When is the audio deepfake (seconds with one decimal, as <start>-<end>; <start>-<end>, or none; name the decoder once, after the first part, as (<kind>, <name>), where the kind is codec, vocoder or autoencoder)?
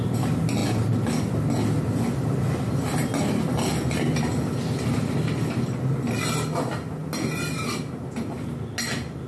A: none